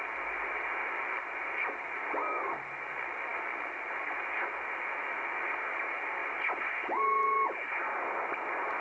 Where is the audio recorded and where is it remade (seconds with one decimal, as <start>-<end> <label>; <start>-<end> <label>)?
0.0-8.8 recorded